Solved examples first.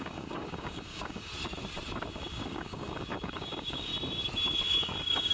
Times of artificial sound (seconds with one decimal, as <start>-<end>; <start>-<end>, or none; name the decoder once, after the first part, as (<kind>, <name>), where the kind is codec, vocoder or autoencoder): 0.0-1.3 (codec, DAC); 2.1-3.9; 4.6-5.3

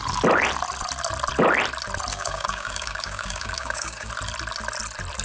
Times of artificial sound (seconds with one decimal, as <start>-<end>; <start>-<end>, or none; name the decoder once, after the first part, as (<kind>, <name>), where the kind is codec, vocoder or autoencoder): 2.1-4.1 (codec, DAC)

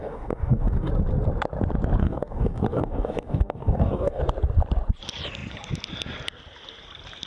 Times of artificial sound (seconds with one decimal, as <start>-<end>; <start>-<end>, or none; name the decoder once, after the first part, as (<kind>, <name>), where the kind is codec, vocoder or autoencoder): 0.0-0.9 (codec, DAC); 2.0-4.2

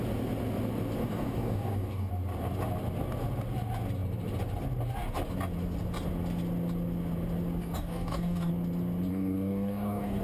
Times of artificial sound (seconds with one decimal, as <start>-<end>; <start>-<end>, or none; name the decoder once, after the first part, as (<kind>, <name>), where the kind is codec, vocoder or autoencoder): 1.0-2.1 (codec, DAC); 7.6-8.5; 9.1-10.2

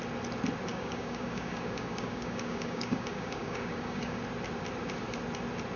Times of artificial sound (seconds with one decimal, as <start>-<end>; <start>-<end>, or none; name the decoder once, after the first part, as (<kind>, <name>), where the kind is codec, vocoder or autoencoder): 0.7-4.2 (codec, DAC)

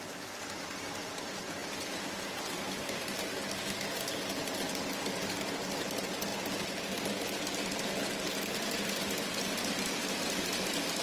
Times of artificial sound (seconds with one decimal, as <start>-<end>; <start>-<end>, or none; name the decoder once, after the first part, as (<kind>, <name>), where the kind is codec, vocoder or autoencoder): none